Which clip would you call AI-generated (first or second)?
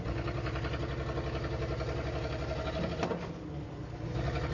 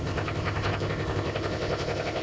second